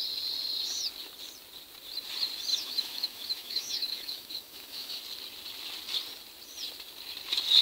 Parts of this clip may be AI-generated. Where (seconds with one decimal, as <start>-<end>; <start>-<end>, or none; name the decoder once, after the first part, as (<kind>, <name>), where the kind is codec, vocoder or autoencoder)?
2.5-5.0 (autoencoder, DAC-VAE)